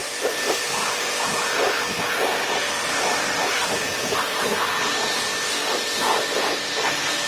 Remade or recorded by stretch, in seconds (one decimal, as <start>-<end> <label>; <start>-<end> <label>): 0.0-4.4 remade; 4.4-7.3 recorded